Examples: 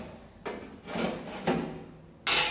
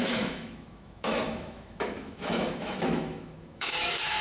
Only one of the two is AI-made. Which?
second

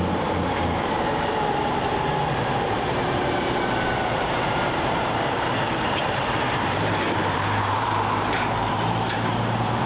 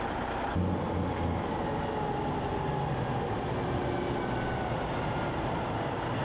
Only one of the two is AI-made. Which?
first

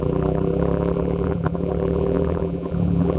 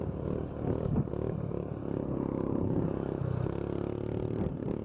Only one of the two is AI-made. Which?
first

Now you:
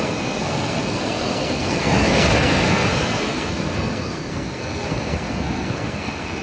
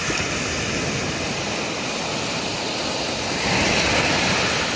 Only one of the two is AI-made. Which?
first